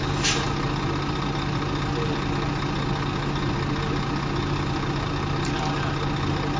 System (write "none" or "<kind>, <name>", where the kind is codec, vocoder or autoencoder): none